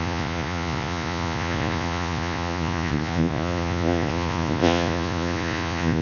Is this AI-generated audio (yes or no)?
yes